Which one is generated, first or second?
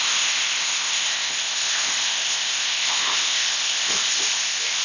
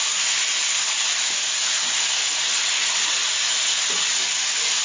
first